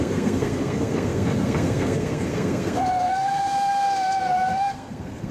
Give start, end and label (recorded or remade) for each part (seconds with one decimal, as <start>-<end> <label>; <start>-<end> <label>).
0.0-5.3 remade